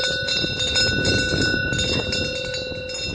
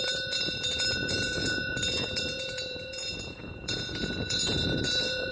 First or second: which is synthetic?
second